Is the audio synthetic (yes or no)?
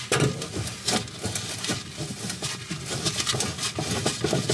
no